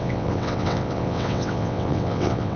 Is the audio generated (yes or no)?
yes